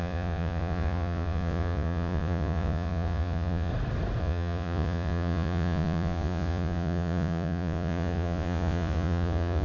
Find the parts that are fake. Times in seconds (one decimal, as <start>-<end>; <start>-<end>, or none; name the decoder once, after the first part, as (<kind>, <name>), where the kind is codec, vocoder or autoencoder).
0.0-3.7 (vocoder, Vocos); 4.2-9.6